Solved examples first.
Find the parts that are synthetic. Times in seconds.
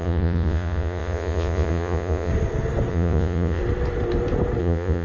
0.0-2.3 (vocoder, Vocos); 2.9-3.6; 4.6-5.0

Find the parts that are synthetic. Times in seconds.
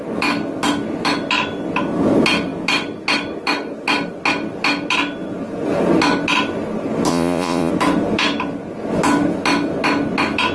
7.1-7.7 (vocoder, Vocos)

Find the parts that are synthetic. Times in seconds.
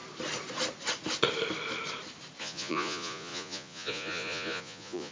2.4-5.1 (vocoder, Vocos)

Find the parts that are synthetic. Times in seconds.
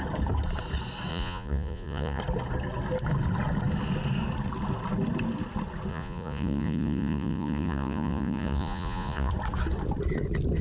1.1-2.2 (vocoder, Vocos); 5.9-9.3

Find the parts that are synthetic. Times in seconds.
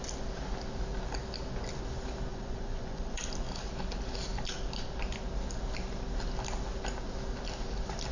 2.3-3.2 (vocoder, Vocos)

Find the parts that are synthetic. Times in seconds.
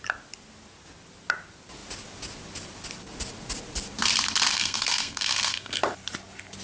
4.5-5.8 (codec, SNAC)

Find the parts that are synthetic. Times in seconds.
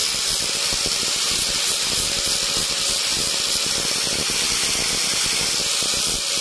none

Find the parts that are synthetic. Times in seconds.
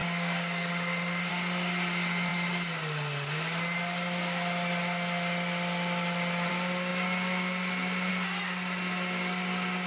0.0-1.3 (codec, DAC)